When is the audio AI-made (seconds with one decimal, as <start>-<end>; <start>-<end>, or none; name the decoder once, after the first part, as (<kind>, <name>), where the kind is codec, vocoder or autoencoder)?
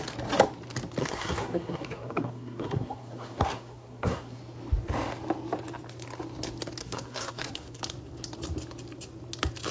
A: 1.0-4.4 (codec, SNAC); 6.8-7.8